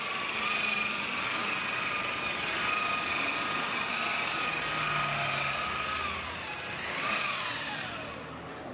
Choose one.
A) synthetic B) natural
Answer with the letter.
B